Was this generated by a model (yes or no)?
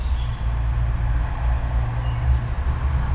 no